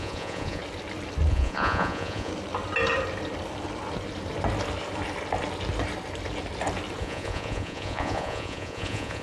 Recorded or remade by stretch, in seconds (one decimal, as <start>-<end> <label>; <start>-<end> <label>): 0.0-0.6 remade; 0.6-1.3 recorded; 1.3-2.3 remade; 2.3-7.0 recorded; 7.0-9.2 remade

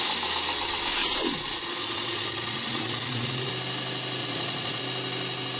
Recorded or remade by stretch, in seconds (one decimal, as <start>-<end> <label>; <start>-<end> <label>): 0.0-1.0 recorded; 1.0-3.5 remade; 3.5-4.2 recorded; 4.2-4.8 remade; 4.8-5.6 recorded